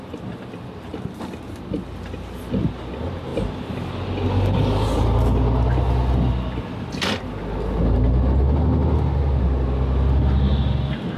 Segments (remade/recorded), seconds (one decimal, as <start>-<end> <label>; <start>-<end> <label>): 0.0-11.2 recorded